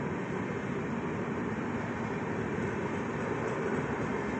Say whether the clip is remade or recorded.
recorded